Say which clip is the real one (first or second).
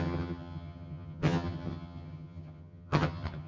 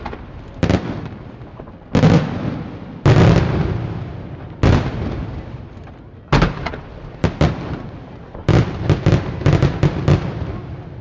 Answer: second